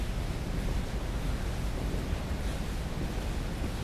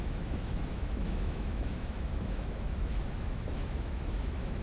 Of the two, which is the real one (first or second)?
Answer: first